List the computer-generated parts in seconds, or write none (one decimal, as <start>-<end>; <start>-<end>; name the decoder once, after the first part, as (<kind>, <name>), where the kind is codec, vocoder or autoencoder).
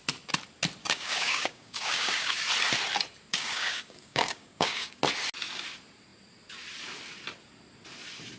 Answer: 0.8-2.4 (codec, DAC); 3.3-5.0